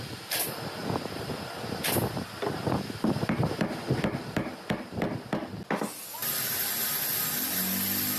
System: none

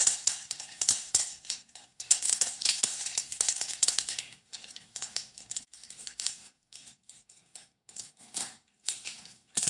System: codec, SNAC